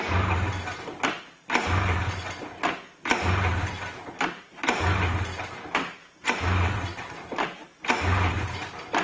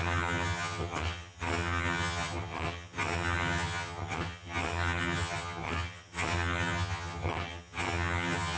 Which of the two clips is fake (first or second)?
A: second